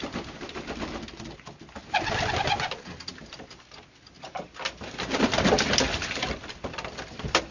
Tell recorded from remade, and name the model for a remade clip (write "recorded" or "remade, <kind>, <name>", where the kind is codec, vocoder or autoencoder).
recorded